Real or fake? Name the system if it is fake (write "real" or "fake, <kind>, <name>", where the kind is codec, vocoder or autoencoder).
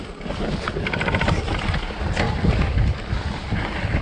fake, vocoder, BigVGAN v2